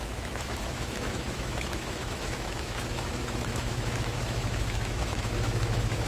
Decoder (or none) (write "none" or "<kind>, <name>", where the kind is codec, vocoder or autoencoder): autoencoder, DAC-VAE